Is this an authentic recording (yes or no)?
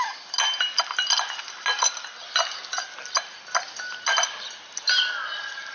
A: yes